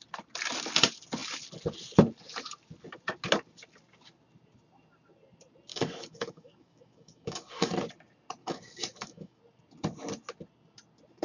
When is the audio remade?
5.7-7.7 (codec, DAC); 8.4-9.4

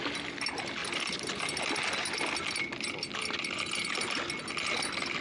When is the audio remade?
none